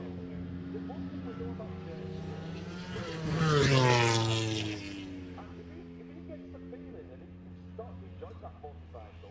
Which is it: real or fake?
real